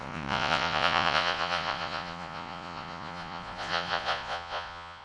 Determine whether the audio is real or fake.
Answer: fake